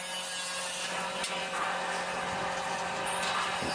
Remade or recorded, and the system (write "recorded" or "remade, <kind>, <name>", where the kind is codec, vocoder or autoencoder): recorded